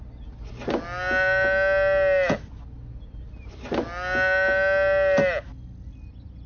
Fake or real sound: real